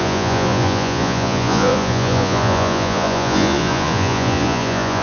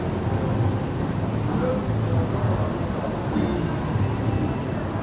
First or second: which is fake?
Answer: first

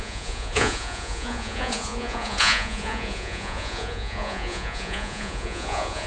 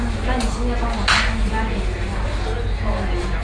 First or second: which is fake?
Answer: first